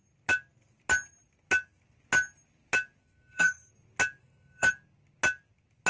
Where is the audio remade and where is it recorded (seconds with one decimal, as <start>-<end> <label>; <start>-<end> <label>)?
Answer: 0.0-3.0 recorded; 3.0-3.7 remade; 3.7-4.2 recorded; 4.2-4.7 remade; 4.7-5.9 recorded